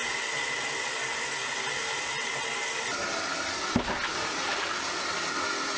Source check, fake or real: real